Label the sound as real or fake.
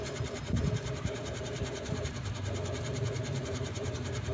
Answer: fake